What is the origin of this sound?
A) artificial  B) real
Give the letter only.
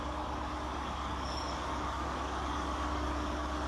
A